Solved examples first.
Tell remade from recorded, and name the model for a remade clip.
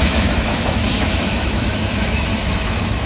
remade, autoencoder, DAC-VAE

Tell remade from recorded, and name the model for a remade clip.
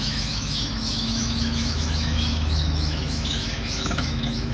remade, autoencoder, DAC-VAE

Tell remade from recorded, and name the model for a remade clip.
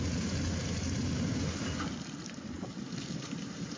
recorded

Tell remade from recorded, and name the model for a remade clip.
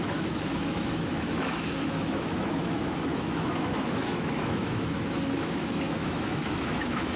remade, autoencoder, DAC-VAE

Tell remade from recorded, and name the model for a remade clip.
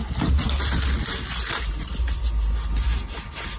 recorded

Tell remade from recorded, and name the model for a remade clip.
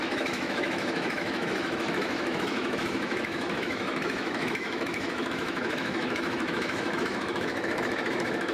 remade, autoencoder, DAC-VAE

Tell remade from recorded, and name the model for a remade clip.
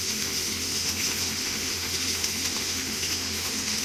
remade, autoencoder, DAC-VAE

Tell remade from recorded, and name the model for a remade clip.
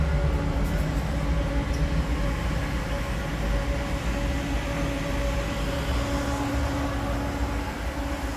recorded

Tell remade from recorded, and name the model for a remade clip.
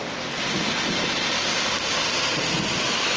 recorded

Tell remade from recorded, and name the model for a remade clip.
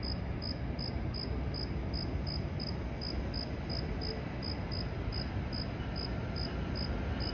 recorded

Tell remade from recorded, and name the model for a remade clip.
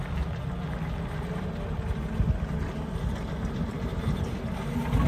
recorded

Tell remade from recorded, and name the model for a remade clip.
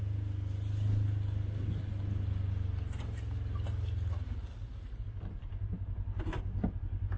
recorded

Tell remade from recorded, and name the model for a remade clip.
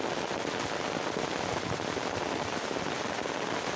recorded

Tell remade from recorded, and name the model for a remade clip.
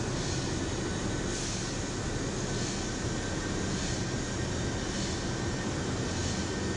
recorded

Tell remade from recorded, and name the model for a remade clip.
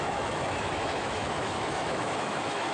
remade, autoencoder, DAC-VAE